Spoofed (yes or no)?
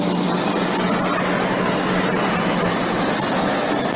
no